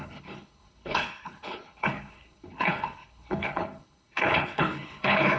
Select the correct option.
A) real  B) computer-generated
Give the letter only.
B